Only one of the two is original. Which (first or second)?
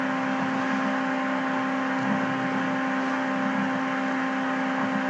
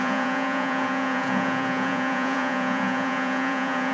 first